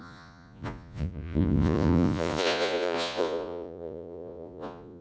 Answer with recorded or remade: remade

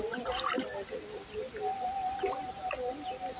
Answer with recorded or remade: recorded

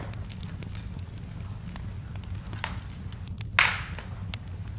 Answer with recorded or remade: recorded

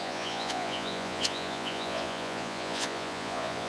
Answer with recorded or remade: remade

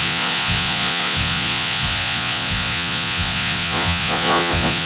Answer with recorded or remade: remade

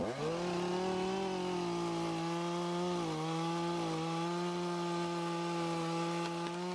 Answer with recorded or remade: recorded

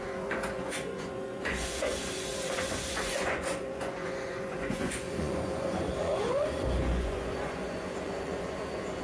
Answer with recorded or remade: remade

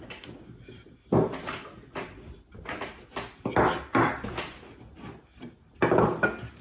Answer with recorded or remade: recorded